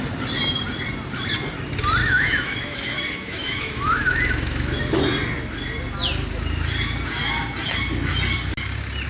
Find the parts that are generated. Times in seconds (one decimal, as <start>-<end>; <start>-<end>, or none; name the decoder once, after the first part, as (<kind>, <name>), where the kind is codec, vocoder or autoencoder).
2.0-5.0 (autoencoder, DAC-VAE)